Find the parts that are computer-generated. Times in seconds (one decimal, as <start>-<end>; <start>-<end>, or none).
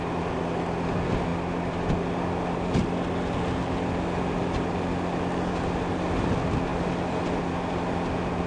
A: none